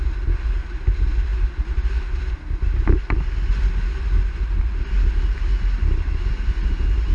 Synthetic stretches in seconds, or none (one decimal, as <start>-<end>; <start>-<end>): none